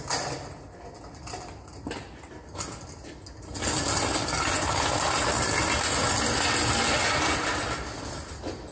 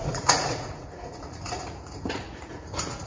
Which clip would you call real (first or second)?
first